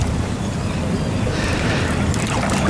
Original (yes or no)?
yes